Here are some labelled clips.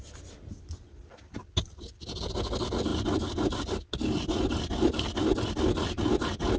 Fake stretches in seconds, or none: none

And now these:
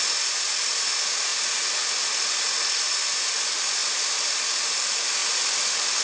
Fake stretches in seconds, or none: 5.2-6.0 (vocoder, BigVGAN v2)

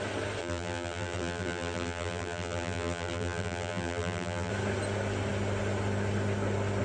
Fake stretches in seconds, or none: 0.4-4.5 (vocoder, BigVGAN v2)

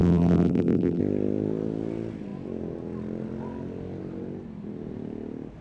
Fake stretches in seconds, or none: 0.0-1.0 (vocoder, BigVGAN v2)

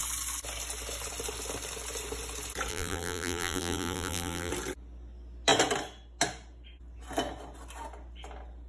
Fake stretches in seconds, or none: 2.7-4.5 (vocoder, BigVGAN v2)